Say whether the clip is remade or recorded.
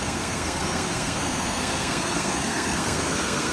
remade